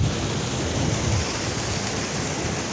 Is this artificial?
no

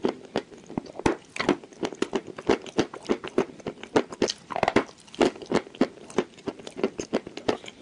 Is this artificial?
no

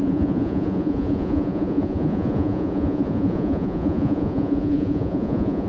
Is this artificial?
yes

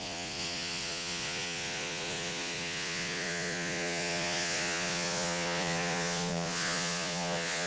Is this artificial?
yes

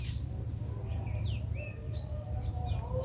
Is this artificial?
no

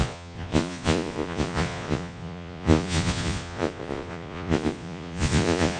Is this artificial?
yes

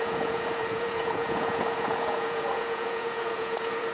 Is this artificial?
yes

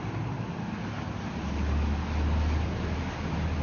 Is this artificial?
no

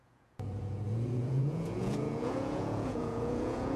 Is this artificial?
yes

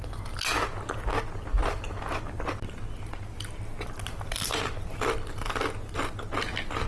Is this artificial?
no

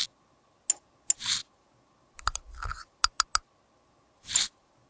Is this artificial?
no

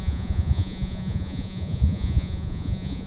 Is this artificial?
yes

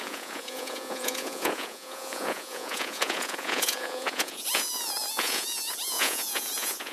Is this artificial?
yes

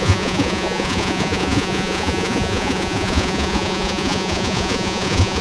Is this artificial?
yes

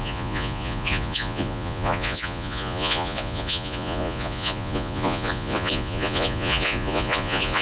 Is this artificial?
yes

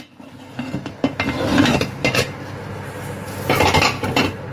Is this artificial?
no